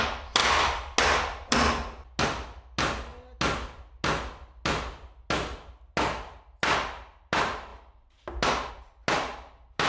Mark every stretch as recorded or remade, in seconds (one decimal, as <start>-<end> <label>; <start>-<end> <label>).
0.0-9.9 recorded

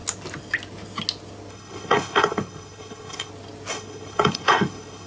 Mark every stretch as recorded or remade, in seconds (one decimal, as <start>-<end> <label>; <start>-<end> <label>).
0.0-1.5 recorded; 1.5-3.3 remade; 3.3-3.7 recorded; 3.7-5.1 remade

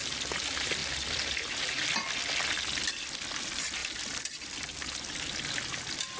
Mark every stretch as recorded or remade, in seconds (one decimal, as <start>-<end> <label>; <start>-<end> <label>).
0.0-6.2 recorded

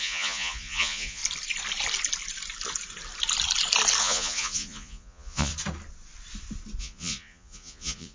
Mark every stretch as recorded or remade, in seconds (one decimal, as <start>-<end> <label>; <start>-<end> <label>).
0.0-1.2 remade; 1.2-4.0 recorded; 4.0-5.5 remade; 5.5-6.8 recorded; 6.8-8.1 remade

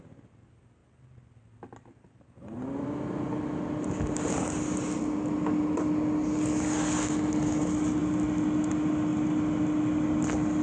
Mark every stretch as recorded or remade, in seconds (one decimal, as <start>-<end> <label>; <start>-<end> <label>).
0.0-10.6 recorded

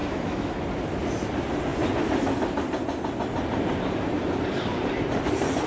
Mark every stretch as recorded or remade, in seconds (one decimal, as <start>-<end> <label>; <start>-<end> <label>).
0.0-0.6 remade; 0.6-5.7 recorded